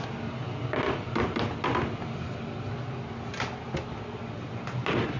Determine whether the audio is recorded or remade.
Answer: recorded